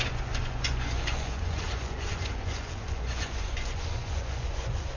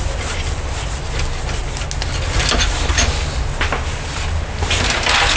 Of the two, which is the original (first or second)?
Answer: second